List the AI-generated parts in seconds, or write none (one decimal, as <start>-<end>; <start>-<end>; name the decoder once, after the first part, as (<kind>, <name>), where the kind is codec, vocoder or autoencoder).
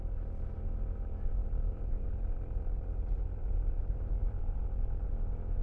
1.4-4.8 (vocoder, BigVGAN v2)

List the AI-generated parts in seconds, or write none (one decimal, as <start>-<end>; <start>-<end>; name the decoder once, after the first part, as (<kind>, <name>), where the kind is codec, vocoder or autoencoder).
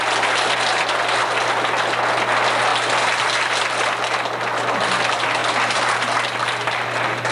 5.4-7.3 (vocoder, BigVGAN v2)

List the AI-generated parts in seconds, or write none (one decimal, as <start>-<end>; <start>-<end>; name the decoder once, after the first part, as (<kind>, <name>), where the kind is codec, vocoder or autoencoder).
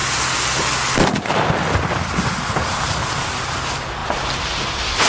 none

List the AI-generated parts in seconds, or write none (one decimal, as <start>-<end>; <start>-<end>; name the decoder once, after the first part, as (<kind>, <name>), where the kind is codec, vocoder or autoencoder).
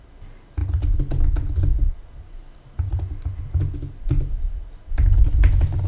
none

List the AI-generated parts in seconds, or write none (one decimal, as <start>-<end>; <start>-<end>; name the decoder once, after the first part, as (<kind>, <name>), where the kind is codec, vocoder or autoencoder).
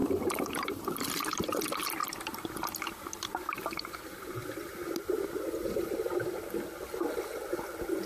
0.0-0.8 (vocoder, BigVGAN v2)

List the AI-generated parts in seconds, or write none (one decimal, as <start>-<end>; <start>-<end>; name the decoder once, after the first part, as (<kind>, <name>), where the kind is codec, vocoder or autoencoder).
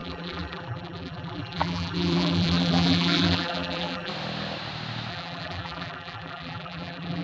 0.0-4.1 (vocoder, BigVGAN v2); 5.1-7.2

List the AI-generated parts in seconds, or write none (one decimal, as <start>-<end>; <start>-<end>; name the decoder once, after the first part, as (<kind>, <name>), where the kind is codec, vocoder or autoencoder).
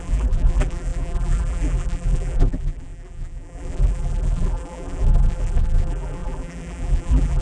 0.0-7.4 (vocoder, BigVGAN v2)